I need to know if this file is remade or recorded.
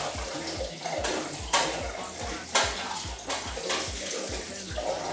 recorded